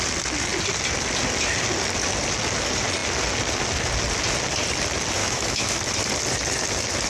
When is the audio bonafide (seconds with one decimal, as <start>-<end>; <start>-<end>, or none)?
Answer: 0.0-5.2; 5.8-7.1